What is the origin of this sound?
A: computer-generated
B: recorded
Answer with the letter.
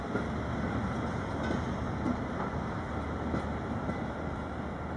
B